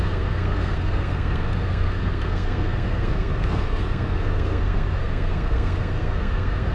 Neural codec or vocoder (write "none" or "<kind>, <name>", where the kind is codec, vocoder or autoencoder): codec, SNAC